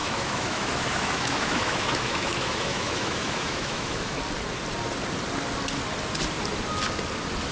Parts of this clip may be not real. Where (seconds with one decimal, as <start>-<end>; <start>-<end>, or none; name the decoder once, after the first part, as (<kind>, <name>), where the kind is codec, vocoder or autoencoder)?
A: 0.0-4.2 (autoencoder, DAC-VAE)